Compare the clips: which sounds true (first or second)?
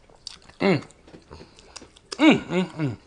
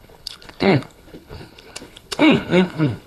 first